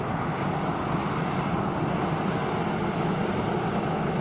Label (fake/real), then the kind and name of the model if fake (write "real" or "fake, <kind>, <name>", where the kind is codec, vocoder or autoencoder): real